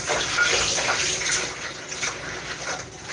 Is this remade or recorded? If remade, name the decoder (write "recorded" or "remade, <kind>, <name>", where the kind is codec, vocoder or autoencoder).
recorded